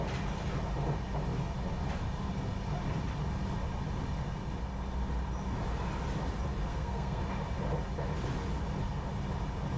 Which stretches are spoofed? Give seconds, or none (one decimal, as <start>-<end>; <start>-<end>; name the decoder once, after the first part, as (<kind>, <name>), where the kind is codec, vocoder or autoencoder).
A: 6.7-7.2 (codec, SNAC)